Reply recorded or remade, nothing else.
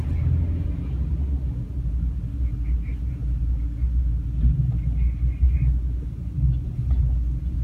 recorded